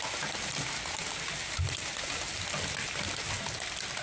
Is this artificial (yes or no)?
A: no